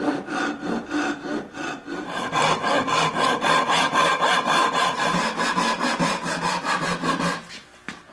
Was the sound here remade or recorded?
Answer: recorded